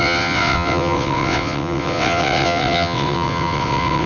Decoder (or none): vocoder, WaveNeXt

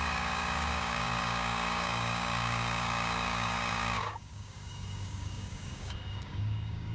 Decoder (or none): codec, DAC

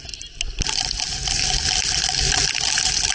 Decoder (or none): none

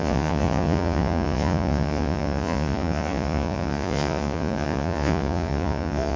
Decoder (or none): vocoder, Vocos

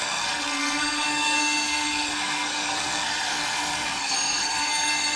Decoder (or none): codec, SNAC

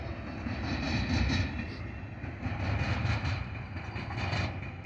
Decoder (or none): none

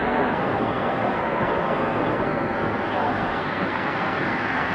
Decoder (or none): codec, SNAC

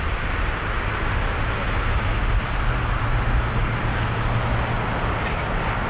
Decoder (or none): none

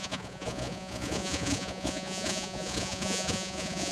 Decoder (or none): vocoder, Vocos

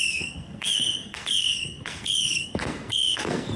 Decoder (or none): codec, SNAC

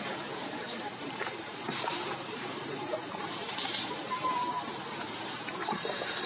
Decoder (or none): vocoder, BigVGAN v2